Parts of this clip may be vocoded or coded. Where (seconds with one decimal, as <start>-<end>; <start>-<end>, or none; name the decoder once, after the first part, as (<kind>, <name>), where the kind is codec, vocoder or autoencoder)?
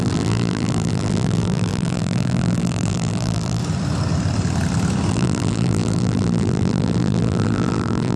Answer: 0.0-3.6 (vocoder, BigVGAN v2); 5.1-8.2